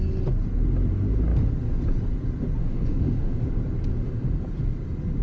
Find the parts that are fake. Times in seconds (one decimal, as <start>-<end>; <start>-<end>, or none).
2.6-3.4; 3.9-4.4